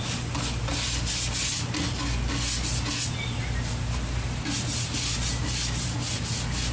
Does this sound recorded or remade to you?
recorded